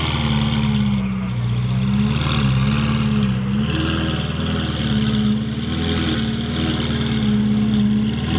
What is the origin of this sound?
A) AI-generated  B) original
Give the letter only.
B